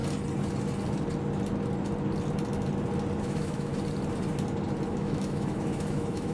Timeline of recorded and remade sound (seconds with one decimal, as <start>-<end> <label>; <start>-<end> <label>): 0.0-3.2 recorded; 3.2-3.7 remade; 3.7-4.9 recorded; 4.9-6.3 remade